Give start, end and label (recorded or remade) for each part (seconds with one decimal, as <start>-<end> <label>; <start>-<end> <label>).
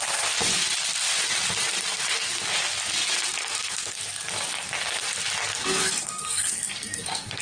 0.0-3.4 recorded; 3.4-4.0 remade; 4.0-5.5 recorded; 5.5-7.4 remade